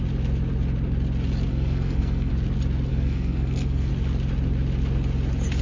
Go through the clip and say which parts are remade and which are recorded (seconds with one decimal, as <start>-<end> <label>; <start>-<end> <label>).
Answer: 0.0-1.5 recorded; 1.5-2.3 remade; 2.3-2.9 recorded; 2.9-3.9 remade; 3.9-5.6 recorded